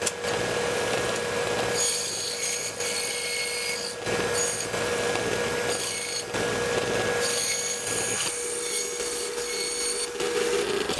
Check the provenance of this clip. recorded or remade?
recorded